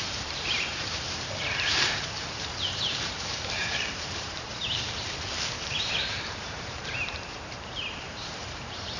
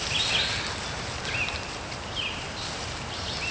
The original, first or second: second